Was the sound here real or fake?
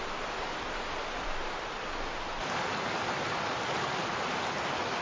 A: real